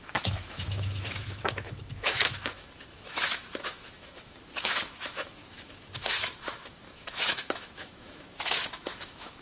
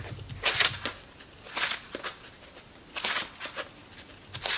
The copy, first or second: first